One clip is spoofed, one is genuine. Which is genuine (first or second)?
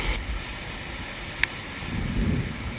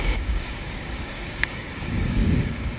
first